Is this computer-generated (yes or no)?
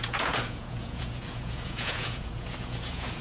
yes